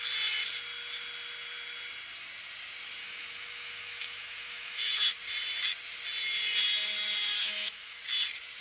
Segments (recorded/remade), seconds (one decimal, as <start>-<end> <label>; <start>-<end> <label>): 0.0-3.0 recorded; 3.0-5.2 remade; 5.2-7.4 recorded; 7.4-8.0 remade; 8.0-8.6 recorded